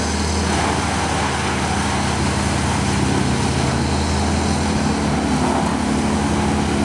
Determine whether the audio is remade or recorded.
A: recorded